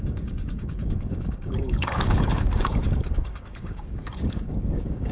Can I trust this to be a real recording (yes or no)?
no